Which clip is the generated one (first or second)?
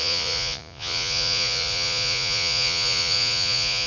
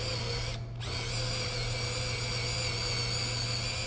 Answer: first